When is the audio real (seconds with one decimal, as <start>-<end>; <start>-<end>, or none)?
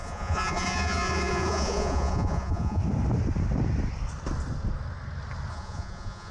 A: 2.8-5.5